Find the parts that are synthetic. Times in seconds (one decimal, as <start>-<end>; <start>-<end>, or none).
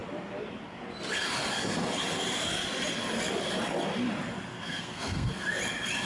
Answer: 4.5-5.3